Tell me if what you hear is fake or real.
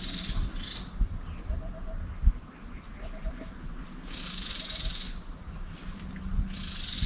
real